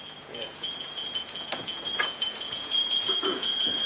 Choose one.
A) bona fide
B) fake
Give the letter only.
B